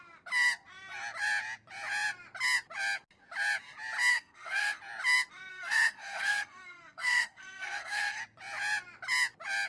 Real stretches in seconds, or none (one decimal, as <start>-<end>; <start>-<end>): 0.0-4.1; 4.8-5.5; 8.2-9.7